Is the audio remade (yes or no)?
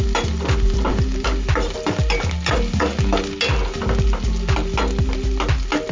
no